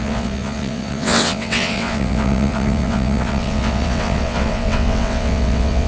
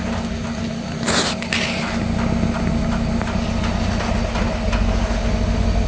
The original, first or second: second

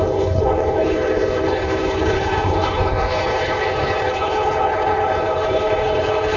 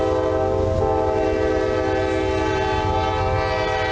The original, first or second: second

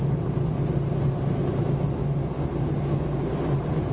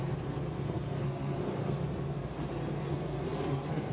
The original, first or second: first